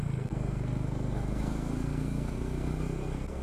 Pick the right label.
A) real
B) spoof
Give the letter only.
B